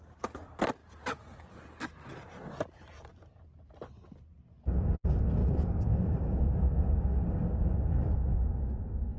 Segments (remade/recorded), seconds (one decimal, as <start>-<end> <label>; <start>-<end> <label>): 0.0-0.8 recorded; 0.8-3.7 remade; 3.7-5.4 recorded; 5.4-6.5 remade; 6.5-9.2 recorded